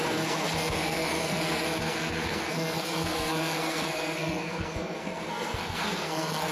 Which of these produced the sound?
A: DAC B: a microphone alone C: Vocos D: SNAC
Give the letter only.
D